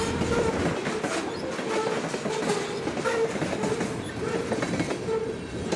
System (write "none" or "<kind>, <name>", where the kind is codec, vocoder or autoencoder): none